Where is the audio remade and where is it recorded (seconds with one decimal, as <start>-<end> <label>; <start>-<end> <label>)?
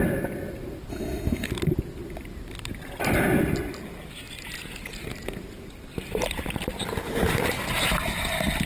0.0-0.9 recorded; 0.9-1.5 remade; 1.5-8.7 recorded